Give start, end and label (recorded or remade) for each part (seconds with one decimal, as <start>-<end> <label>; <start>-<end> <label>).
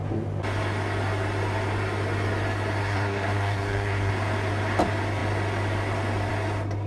0.0-2.8 recorded; 2.8-4.1 remade; 4.1-6.9 recorded